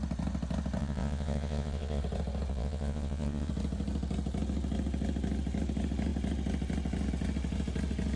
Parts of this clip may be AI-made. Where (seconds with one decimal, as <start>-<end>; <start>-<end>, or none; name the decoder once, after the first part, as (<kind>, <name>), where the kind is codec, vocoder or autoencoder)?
0.8-2.0 (vocoder, Vocos); 2.5-3.5